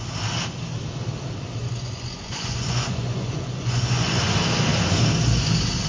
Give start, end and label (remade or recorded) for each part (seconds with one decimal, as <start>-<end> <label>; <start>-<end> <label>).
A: 0.0-1.6 recorded; 1.6-4.2 remade; 4.2-5.9 recorded